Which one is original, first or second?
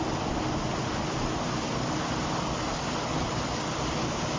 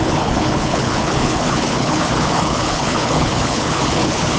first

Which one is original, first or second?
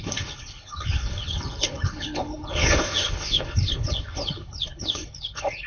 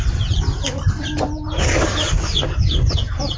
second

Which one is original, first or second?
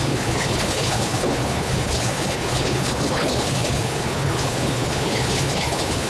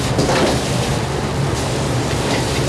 second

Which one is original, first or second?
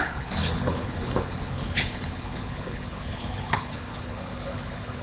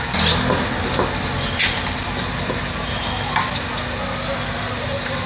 second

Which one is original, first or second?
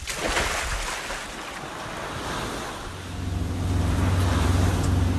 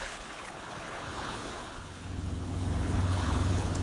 first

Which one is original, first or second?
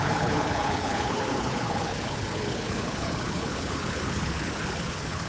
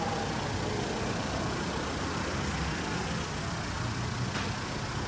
second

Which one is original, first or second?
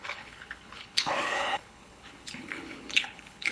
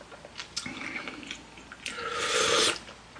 second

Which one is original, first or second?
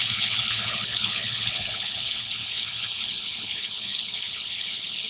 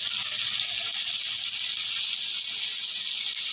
second